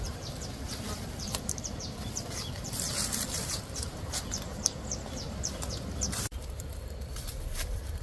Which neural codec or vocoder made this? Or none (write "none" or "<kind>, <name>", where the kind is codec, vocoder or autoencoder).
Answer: vocoder, BigVGAN v2